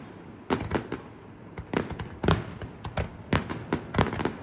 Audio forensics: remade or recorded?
recorded